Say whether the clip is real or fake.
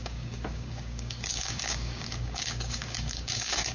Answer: fake